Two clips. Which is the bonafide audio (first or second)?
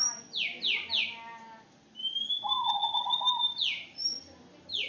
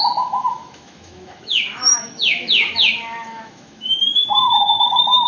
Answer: first